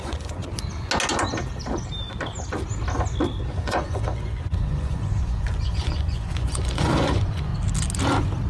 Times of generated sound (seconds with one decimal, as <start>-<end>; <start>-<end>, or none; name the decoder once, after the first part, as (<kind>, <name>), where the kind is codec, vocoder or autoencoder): 0.0-0.4 (vocoder, Vocos); 3.5-7.5